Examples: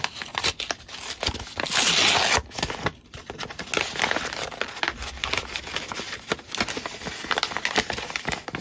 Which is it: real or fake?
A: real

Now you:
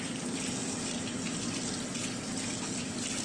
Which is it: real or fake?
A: real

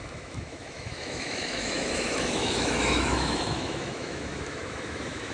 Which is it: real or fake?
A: fake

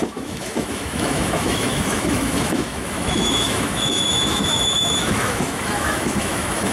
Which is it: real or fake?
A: fake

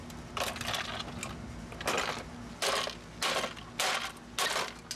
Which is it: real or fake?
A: real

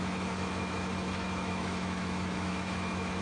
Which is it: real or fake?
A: fake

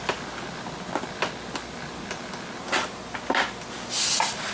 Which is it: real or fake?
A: real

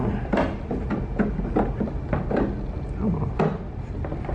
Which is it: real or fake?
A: real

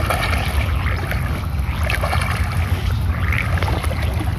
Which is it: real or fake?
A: real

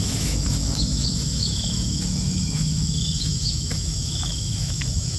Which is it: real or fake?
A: fake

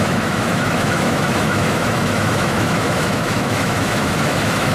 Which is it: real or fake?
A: fake